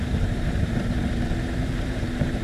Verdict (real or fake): fake